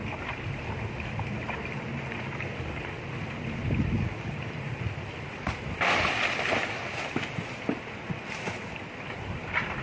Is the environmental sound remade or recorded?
remade